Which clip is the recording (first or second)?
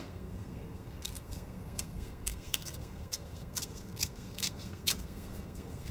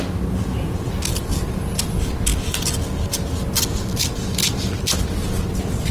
second